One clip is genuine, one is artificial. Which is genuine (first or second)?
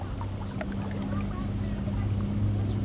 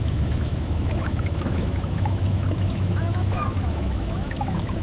first